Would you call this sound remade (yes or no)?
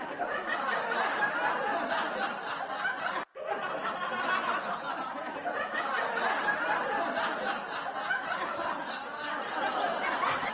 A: no